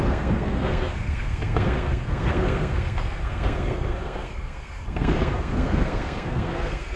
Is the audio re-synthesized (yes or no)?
yes